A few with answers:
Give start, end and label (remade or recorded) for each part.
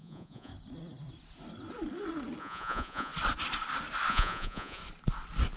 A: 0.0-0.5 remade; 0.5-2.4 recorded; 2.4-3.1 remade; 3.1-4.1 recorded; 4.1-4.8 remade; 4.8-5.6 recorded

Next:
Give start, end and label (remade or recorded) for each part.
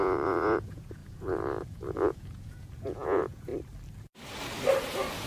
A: 0.0-3.5 remade; 3.5-5.3 recorded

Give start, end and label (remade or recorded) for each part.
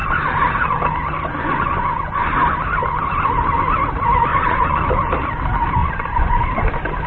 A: 0.0-1.4 recorded; 1.4-2.3 remade; 2.3-4.3 recorded; 4.3-5.0 remade; 5.0-5.8 recorded; 5.8-6.4 remade; 6.4-7.1 recorded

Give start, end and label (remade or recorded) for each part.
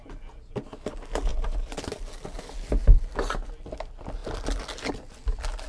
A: 0.0-5.7 recorded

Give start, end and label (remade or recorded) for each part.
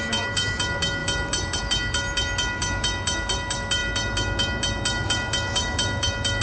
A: 0.0-6.4 recorded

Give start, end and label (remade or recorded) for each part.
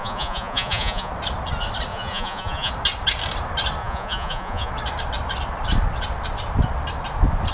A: 0.0-1.1 remade; 1.1-1.9 recorded; 1.9-2.7 remade; 2.7-3.8 recorded; 3.8-4.7 remade; 4.7-7.5 recorded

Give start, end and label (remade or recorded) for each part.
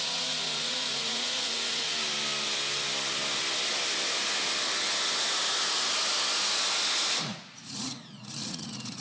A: 0.0-1.9 remade; 1.9-7.1 recorded; 7.1-9.0 remade